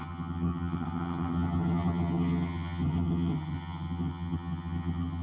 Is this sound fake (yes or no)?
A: yes